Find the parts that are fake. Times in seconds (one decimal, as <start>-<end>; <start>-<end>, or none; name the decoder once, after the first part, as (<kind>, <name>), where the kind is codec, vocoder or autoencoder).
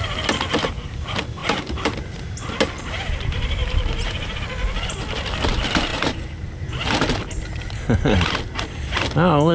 1.4-2.4 (vocoder, BigVGAN v2); 3.6-4.4; 5.9-6.5